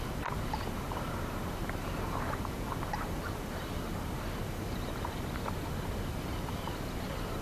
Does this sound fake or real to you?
fake